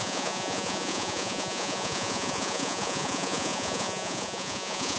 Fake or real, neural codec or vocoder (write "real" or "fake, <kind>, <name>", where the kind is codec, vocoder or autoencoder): fake, vocoder, Vocos